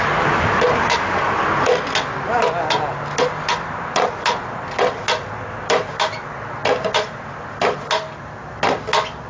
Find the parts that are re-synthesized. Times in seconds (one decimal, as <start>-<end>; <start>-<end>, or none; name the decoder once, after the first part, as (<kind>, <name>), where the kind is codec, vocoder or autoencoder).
none